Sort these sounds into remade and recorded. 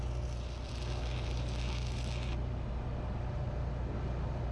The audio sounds recorded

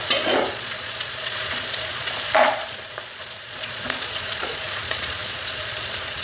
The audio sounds remade